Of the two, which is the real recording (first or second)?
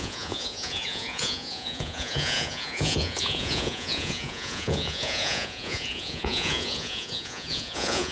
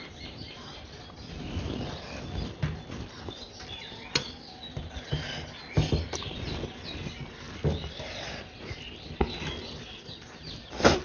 second